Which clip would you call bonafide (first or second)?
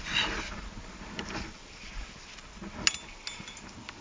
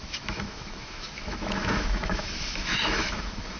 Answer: first